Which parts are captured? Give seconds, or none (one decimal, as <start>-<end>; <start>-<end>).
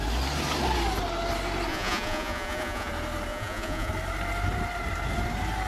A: 0.0-1.7; 2.9-3.3; 3.9-5.7